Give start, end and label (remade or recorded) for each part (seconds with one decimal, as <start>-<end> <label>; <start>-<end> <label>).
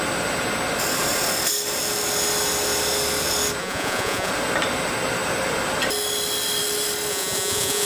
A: 0.0-3.6 recorded; 3.6-4.3 remade; 4.3-7.1 recorded; 7.1-7.9 remade